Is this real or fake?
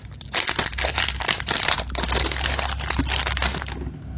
real